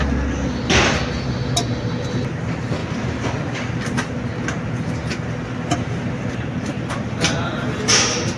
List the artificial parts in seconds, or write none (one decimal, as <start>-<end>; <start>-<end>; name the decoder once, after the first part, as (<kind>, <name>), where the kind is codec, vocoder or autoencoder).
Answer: none